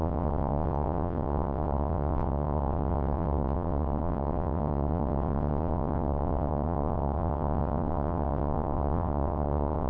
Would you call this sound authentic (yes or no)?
no